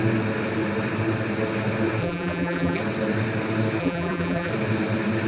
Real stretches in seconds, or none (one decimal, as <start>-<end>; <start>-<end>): 0.0-2.0; 2.8-3.8; 4.5-5.3